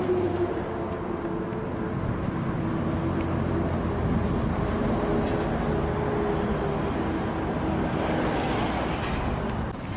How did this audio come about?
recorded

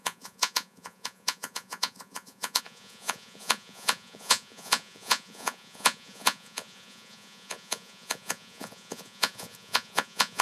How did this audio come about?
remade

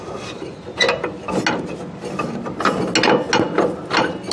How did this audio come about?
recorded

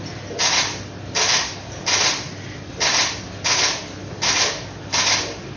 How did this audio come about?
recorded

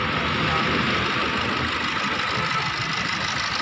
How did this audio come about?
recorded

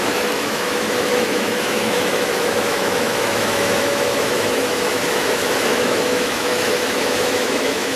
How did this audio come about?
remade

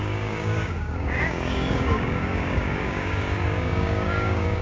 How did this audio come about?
remade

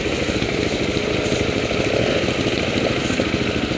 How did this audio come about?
recorded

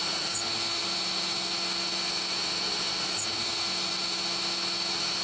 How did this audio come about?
recorded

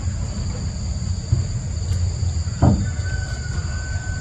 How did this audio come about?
recorded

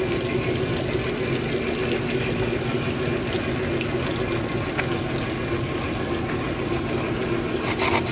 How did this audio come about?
recorded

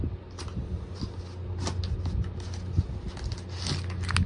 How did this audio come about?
recorded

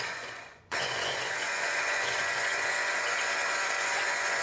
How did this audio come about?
remade